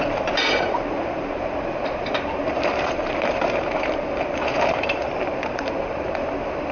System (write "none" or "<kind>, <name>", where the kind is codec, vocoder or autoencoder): vocoder, BigVGAN v2